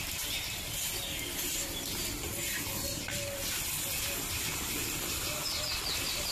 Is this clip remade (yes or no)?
no